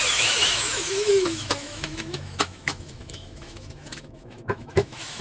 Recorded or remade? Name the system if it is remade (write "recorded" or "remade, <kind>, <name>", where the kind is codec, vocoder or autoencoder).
remade, autoencoder, DAC-VAE